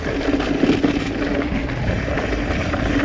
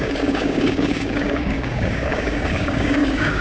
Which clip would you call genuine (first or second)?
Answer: first